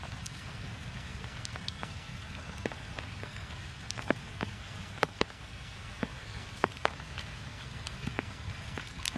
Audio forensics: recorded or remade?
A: remade